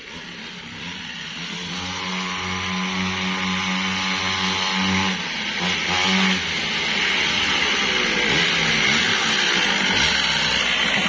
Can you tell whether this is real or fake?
real